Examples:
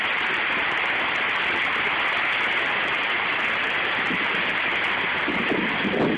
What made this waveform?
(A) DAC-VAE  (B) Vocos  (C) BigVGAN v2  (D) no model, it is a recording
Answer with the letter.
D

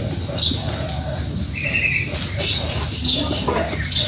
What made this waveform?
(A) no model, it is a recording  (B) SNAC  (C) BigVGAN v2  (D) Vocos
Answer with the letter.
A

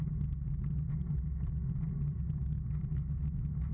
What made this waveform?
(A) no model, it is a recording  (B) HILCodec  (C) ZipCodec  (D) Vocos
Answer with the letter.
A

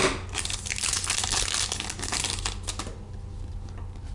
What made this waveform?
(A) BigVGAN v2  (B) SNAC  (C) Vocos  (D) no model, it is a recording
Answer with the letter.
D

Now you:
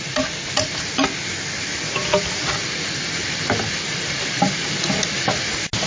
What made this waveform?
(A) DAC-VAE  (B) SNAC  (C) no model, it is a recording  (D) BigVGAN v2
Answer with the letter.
C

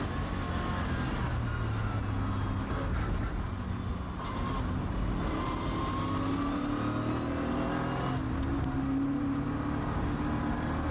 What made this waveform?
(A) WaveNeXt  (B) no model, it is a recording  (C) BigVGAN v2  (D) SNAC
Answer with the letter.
B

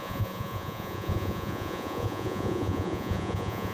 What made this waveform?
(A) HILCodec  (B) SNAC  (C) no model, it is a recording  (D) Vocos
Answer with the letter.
D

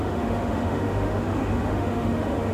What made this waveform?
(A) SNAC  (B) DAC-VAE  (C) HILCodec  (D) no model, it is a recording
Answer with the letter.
B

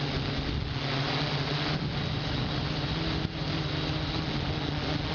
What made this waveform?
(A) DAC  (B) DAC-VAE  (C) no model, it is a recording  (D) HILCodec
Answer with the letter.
C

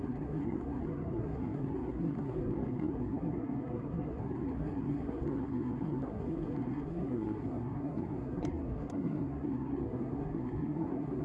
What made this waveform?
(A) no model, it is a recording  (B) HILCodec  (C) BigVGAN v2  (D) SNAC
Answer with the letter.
D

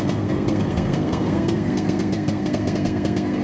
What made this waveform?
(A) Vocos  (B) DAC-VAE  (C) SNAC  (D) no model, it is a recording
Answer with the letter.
C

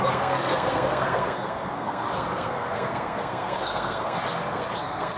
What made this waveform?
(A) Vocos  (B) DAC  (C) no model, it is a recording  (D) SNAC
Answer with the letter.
D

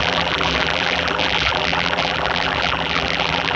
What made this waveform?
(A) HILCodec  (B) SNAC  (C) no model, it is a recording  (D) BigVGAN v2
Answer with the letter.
D